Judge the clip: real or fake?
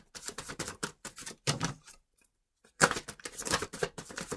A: fake